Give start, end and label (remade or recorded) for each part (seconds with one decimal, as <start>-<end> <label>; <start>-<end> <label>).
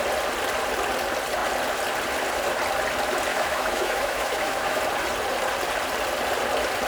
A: 0.0-3.3 recorded; 3.3-4.8 remade; 4.8-6.9 recorded